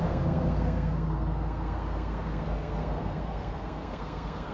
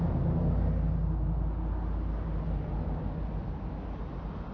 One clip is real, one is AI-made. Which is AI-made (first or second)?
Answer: first